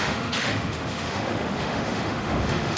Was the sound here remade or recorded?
remade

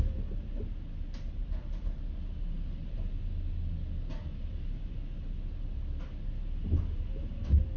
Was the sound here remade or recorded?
recorded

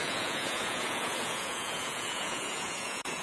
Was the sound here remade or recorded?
remade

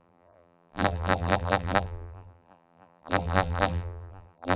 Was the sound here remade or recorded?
remade